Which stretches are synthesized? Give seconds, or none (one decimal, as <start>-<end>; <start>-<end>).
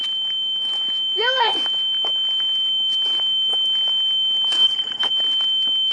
4.6-5.1